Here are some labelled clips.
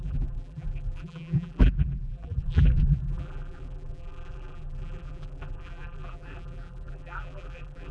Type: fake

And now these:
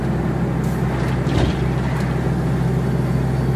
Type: real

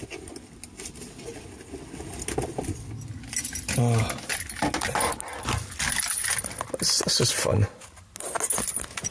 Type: real